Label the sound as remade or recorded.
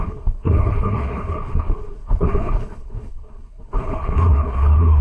remade